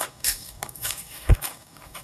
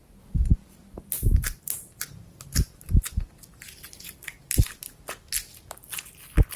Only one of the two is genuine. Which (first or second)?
second